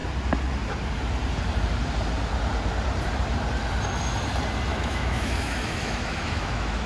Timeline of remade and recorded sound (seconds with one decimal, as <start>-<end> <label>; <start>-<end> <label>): 0.0-4.7 recorded; 4.7-6.9 remade